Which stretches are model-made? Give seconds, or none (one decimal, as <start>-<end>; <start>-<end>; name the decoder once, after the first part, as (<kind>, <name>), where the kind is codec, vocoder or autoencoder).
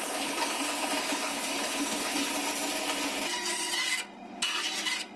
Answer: 0.0-2.3 (codec, HILCodec)